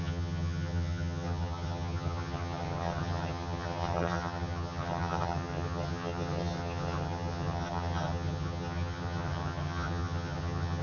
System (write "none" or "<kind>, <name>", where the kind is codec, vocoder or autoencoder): vocoder, HiFi-GAN